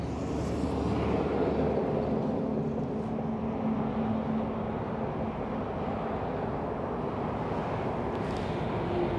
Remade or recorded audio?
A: recorded